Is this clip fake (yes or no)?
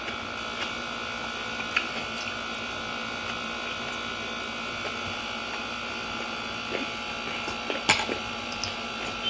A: no